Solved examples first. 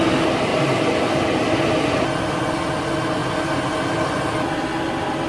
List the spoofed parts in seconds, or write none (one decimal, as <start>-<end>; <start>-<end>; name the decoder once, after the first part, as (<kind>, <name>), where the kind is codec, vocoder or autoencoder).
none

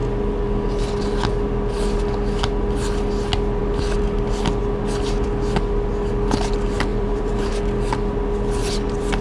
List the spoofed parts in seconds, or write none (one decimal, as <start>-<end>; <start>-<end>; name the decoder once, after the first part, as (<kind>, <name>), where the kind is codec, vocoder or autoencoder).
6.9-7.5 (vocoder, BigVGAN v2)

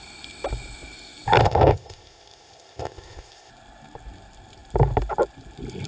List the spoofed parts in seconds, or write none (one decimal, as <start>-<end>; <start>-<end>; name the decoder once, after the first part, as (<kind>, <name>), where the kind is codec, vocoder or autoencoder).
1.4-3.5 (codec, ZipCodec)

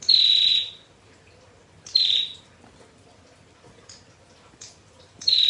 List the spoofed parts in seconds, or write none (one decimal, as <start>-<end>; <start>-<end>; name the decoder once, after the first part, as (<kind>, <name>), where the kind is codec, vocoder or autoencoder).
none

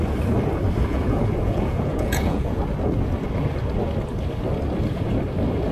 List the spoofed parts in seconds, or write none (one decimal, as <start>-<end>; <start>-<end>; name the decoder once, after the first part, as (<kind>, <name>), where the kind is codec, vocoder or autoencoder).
0.9-2.6 (vocoder, Vocos)